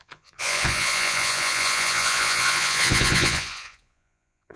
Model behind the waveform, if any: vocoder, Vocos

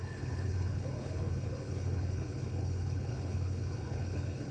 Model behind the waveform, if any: codec, HILCodec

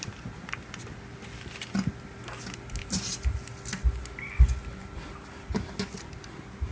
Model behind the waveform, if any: none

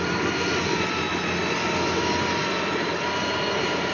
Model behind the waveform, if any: none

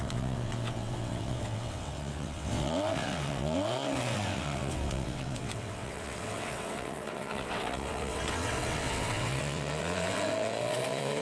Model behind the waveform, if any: vocoder, WaveNeXt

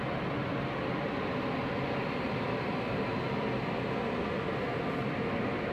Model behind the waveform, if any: none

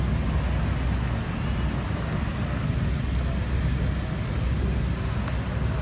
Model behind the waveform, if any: none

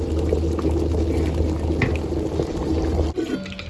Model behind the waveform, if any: none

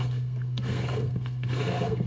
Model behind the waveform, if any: codec, SNAC